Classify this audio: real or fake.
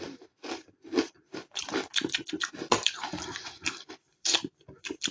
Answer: fake